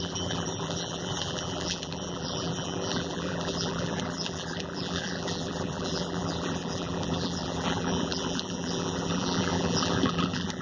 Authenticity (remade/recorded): remade